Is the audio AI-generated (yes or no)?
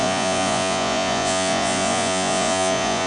yes